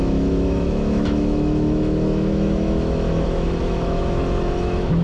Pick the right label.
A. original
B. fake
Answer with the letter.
B